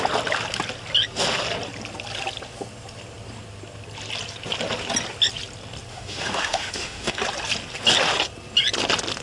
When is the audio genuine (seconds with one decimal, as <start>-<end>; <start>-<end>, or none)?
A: 0.0-5.9; 7.2-9.2